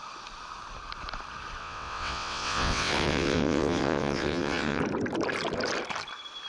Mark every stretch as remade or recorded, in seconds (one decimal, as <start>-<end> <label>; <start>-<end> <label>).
0.0-1.6 recorded; 1.6-4.8 remade; 4.8-6.5 recorded